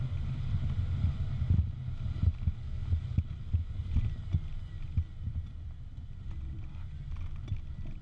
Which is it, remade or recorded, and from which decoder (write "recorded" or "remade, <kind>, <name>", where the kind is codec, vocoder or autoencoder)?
recorded